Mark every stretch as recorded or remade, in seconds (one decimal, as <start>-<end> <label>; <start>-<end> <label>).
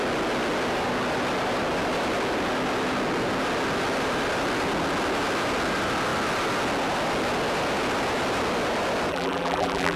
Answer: 0.0-9.1 recorded; 9.1-10.0 remade